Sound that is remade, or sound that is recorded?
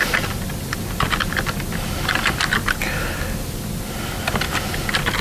recorded